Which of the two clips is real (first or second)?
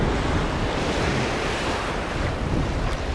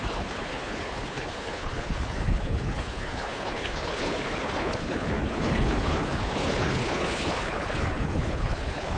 first